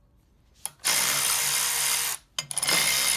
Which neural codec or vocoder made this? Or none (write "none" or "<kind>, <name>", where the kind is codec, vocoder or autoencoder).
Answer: none